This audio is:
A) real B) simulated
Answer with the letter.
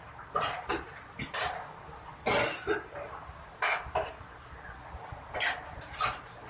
A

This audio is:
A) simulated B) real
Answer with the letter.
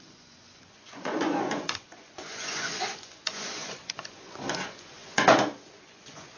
A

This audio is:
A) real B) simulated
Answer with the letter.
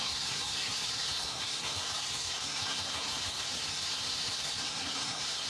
B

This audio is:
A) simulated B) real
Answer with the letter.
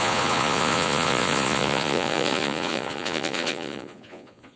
A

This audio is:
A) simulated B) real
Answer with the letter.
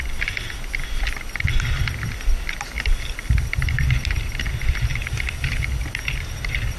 B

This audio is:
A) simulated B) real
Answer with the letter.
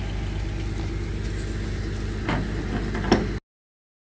B